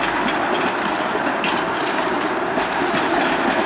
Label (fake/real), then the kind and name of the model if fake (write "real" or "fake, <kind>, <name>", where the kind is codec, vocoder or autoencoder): real